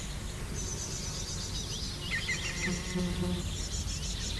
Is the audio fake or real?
real